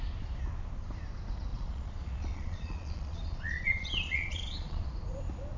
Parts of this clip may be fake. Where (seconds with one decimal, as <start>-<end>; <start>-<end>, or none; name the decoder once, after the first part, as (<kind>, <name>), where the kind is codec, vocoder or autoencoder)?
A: 1.5-4.9 (vocoder, Vocos)